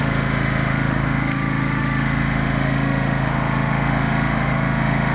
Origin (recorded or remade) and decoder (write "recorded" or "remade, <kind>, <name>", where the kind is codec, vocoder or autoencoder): remade, autoencoder, DAC-VAE